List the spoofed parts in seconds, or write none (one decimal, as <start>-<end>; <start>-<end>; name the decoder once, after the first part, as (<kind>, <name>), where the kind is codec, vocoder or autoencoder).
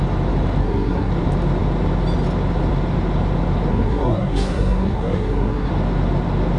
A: 0.6-1.1 (codec, SNAC); 3.7-5.7